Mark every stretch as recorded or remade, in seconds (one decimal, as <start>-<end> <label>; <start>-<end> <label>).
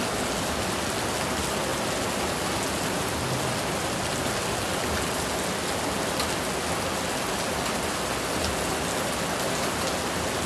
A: 0.0-10.5 recorded